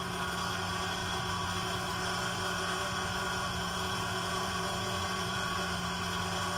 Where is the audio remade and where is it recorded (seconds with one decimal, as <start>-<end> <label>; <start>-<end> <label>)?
0.0-2.8 recorded; 2.8-5.6 remade; 5.6-6.6 recorded